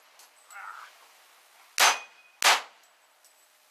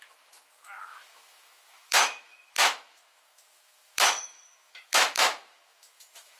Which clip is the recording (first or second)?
first